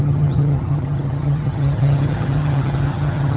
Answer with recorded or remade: remade